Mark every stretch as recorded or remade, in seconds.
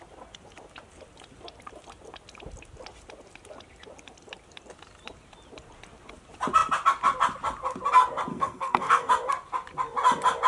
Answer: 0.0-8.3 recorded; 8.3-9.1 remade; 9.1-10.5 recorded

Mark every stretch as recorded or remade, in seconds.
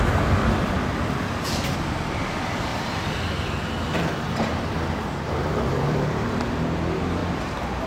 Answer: 0.0-2.7 recorded; 2.7-6.5 remade; 6.5-7.2 recorded; 7.2-7.9 remade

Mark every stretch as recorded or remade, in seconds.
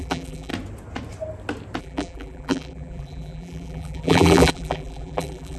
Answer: 0.0-0.5 remade; 0.5-1.8 recorded; 1.8-5.6 remade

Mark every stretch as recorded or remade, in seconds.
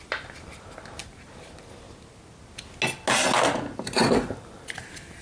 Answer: 0.0-5.2 recorded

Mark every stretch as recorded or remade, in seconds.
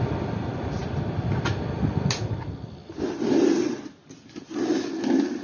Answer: 0.0-5.4 recorded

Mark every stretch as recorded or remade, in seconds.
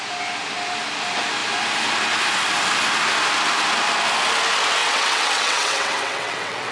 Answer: 0.0-4.8 recorded; 4.8-6.7 remade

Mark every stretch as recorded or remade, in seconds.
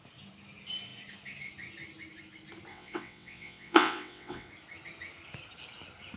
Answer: 0.0-2.7 recorded; 2.7-4.5 remade; 4.5-6.2 recorded